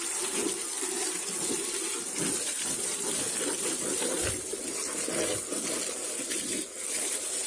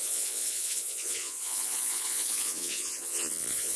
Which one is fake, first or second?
second